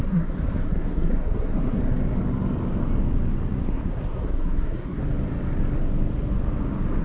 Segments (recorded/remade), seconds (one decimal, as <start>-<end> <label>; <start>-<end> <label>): 0.0-1.8 remade; 1.8-3.6 recorded; 3.6-5.0 remade; 5.0-7.0 recorded